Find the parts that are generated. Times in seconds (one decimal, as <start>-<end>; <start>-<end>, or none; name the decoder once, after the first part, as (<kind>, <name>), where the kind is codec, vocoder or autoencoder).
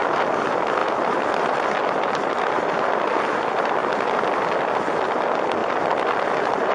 5.6-6.7 (vocoder, BigVGAN v2)